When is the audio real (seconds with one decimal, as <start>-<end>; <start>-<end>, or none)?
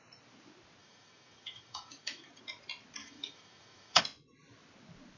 0.0-0.8; 2.3-3.0; 4.0-5.2